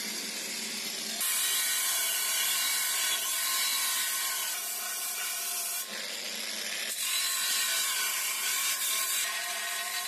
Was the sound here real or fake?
real